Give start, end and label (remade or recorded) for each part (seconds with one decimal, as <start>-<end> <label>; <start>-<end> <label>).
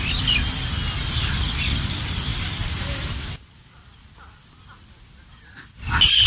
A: 0.0-6.3 recorded